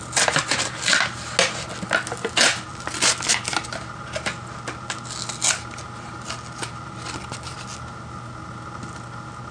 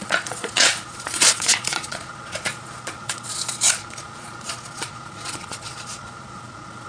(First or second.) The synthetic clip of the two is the second